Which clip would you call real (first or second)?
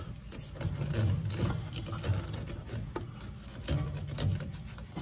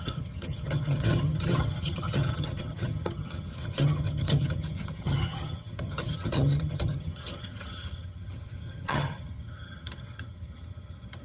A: first